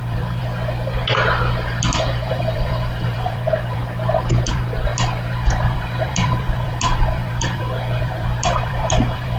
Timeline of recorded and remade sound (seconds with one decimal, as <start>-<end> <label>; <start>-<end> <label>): 0.0-0.4 remade; 0.4-2.3 recorded; 2.3-3.8 remade; 3.8-4.5 recorded; 4.5-4.9 remade; 4.9-5.5 recorded; 5.5-9.4 remade

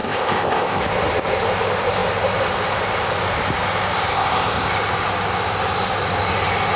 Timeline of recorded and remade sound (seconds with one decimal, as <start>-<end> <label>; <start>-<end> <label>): 0.0-0.8 remade; 0.8-4.1 recorded; 4.1-4.7 remade; 4.7-6.8 recorded

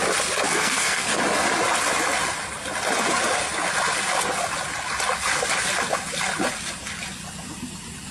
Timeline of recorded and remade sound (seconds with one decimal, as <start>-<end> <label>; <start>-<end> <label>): 0.0-0.5 recorded; 0.5-1.2 remade; 1.2-8.1 recorded